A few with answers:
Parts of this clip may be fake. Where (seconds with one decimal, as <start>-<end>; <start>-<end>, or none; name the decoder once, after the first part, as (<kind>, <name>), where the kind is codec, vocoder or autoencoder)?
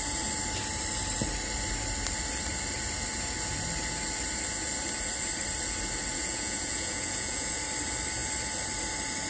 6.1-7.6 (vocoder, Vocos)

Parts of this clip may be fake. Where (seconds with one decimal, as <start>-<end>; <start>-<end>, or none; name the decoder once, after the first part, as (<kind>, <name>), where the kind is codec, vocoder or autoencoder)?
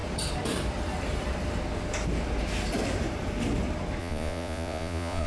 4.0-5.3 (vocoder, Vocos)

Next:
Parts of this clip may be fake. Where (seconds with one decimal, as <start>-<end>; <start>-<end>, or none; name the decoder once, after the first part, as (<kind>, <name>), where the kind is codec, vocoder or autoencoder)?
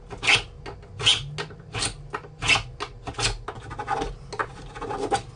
none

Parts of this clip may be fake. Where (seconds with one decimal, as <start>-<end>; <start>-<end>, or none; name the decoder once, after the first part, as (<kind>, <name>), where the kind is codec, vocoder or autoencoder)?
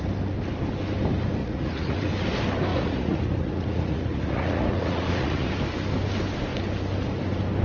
1.4-2.1 (vocoder, Vocos); 2.7-5.5